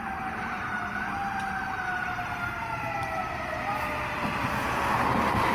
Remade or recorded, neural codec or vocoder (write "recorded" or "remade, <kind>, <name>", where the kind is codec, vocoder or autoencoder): recorded